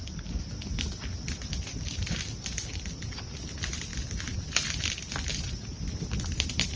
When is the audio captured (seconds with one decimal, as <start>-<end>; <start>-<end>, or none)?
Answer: 0.0-6.8